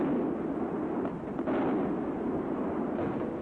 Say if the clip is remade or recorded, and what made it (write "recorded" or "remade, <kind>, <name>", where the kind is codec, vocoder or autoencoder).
recorded